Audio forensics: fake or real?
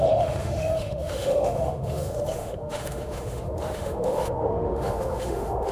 fake